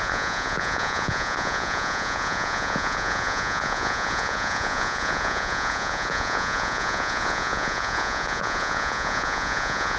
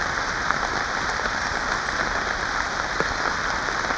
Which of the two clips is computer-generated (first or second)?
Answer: first